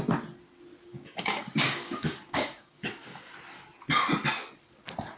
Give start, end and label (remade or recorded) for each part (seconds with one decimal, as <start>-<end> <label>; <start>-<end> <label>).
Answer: 0.0-0.9 recorded; 0.9-3.3 remade; 3.3-5.2 recorded